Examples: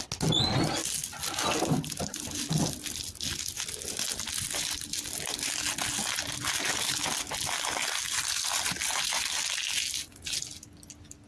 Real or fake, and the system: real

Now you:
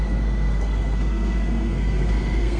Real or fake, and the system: fake, codec, SNAC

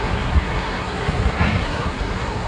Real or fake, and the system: fake, codec, SNAC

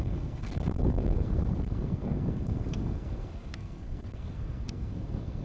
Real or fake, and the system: fake, codec, SNAC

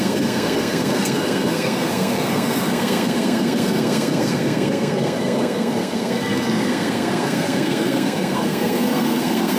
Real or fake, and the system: fake, codec, SNAC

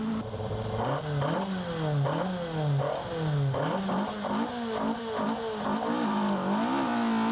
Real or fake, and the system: real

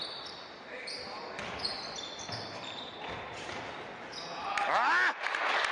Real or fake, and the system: real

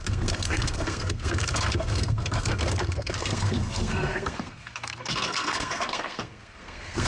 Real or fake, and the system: fake, codec, SNAC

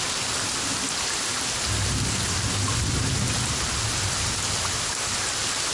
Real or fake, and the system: real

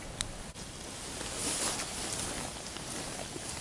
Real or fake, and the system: real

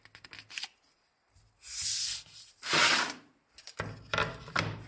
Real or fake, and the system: real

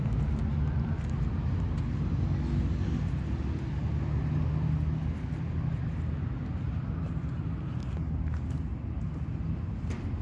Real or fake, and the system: real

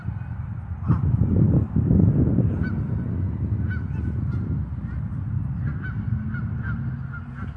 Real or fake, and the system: real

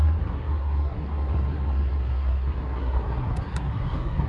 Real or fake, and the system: fake, codec, SNAC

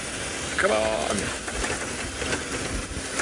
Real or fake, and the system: real